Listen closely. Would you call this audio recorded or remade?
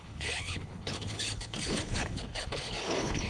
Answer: remade